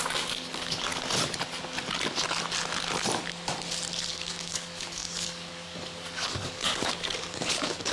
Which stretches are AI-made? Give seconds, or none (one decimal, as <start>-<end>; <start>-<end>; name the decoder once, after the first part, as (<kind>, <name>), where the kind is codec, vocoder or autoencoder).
0.0-0.9 (codec, DAC); 4.1-7.9